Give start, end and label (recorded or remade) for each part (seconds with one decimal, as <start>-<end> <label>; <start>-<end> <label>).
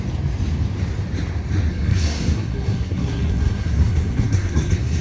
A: 0.0-1.7 recorded; 1.7-5.0 remade